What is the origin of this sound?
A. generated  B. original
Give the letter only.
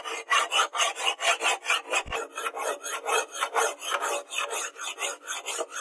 B